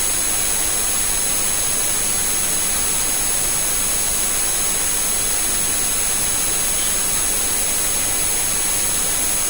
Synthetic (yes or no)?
no